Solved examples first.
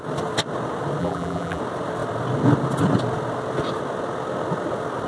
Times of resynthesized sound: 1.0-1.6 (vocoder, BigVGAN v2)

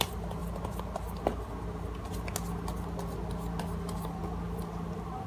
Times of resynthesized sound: 0.0-0.4 (vocoder, BigVGAN v2); 3.6-4.2

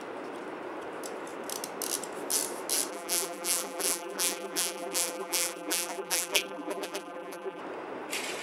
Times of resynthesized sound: 2.9-7.6 (vocoder, BigVGAN v2)